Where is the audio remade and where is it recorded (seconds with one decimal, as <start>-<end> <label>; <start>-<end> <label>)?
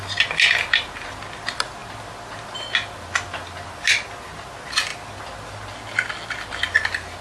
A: 0.0-7.2 recorded